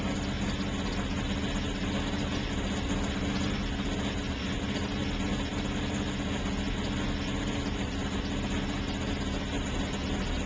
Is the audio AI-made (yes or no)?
no